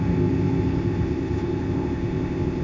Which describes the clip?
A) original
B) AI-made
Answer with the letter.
B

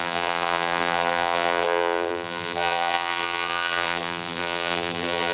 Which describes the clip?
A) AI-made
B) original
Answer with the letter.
A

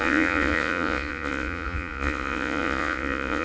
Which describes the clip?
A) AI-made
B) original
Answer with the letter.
A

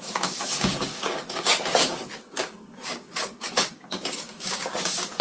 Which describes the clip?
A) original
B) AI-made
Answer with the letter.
B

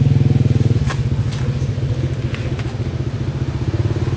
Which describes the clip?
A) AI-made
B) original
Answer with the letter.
B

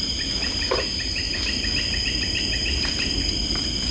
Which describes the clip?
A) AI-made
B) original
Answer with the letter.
B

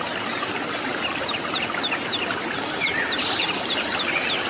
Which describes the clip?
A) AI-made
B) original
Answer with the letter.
A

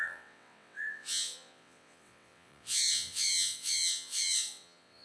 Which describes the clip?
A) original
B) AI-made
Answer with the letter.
B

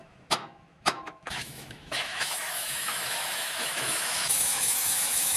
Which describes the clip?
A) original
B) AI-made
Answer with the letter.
B